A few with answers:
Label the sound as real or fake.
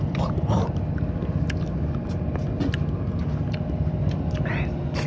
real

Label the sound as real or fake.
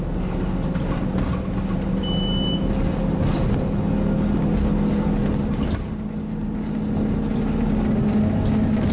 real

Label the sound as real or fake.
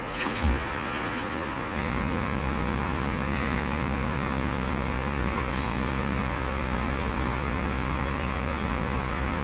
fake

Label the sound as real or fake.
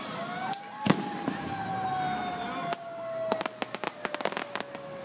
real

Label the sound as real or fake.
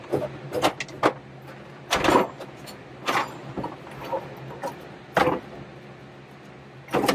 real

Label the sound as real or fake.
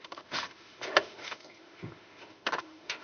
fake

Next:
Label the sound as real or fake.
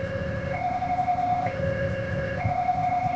fake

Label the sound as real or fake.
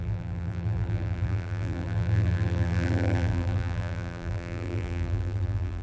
fake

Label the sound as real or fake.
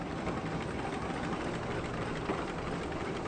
real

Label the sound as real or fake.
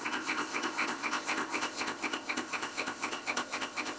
fake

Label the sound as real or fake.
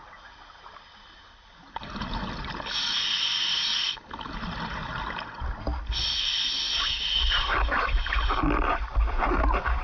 real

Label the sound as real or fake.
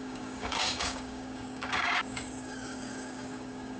fake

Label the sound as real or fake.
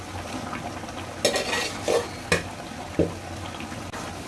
real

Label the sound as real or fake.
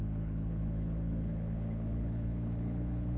fake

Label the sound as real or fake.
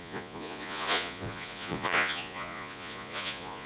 fake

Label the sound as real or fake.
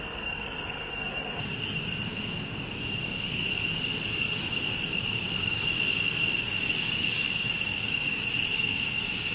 fake